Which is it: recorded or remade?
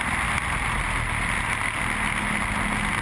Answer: recorded